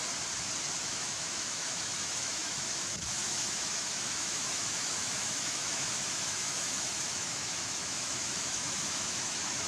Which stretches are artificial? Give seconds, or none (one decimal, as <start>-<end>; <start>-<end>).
0.8-9.7